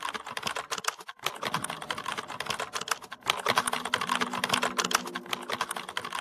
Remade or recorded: recorded